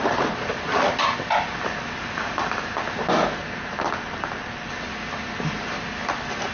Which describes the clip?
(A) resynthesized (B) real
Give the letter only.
B